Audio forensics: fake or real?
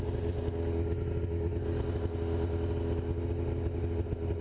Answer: real